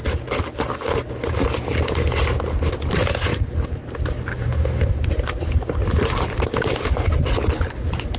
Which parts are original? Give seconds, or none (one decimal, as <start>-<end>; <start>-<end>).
0.0-4.3; 5.0-8.2